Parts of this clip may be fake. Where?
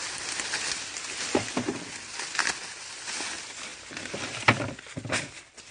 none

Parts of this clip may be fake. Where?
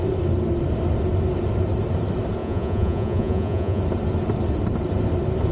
2.4-3.8 (vocoder, Vocos)